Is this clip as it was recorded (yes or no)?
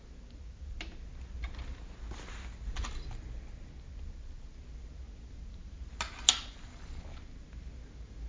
yes